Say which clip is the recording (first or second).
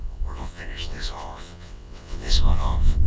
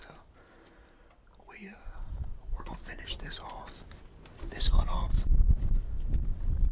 second